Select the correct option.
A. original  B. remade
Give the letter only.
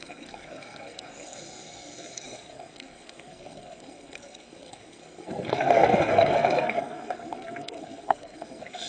B